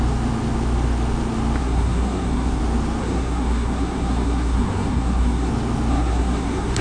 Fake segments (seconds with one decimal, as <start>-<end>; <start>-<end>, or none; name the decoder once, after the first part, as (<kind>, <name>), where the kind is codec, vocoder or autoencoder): 1.6-2.6 (codec, SNAC); 3.0-5.5; 5.9-6.8